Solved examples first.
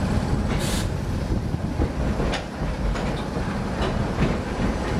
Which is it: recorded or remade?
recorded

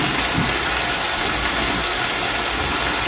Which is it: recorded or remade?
recorded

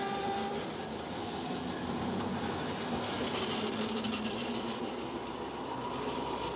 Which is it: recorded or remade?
remade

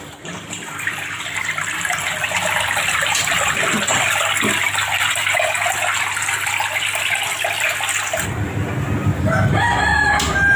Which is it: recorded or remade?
remade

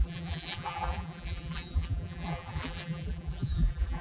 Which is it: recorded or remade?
remade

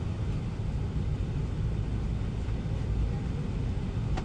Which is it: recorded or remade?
recorded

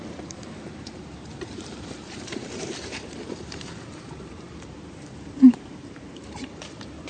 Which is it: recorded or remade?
remade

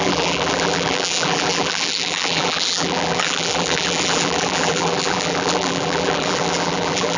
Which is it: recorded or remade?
remade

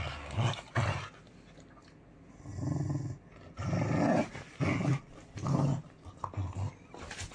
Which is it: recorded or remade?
recorded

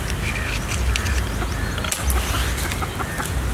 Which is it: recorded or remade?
recorded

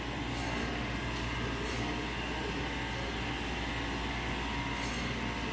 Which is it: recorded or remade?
recorded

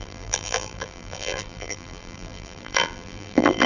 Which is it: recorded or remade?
remade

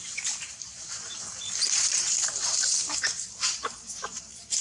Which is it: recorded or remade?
remade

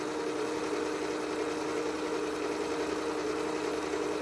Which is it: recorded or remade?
recorded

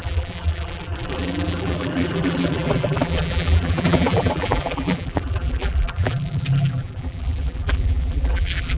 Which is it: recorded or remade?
remade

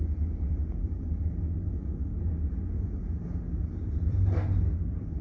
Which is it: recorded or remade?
remade